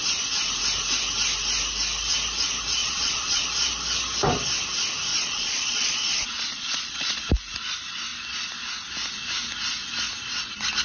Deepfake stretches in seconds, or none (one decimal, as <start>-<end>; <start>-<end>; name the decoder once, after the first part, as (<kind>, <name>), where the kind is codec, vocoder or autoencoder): 2.8-3.4 (vocoder, Vocos); 5.1-7.2